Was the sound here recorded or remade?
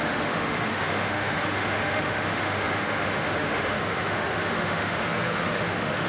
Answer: remade